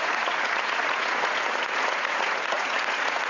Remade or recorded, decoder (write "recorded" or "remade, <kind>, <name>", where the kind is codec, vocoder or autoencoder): remade, vocoder, Vocos